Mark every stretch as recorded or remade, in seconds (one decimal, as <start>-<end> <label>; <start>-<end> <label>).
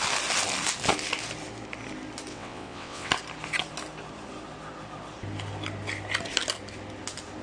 0.0-2.3 recorded; 2.3-3.1 remade; 3.1-7.4 recorded